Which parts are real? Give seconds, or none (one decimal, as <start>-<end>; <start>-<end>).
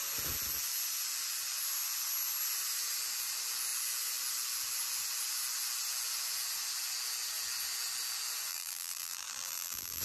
0.0-8.5